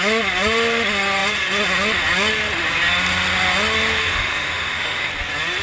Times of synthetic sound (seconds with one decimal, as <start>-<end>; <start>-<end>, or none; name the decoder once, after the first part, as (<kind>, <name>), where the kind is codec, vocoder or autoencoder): 4.0-5.1 (autoencoder, DAC-VAE)